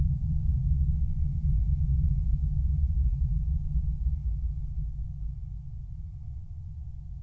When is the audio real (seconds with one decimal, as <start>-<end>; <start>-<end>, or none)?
0.6-1.3; 3.6-7.2